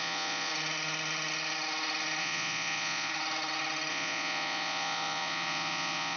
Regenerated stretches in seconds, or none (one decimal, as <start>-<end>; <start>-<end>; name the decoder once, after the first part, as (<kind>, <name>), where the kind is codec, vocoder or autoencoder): 0.0-0.5 (vocoder, Vocos); 2.2-3.1; 3.9-6.2